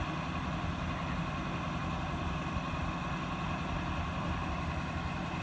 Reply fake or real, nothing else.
real